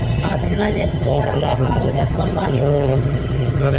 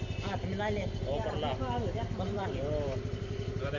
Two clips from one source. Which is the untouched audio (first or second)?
second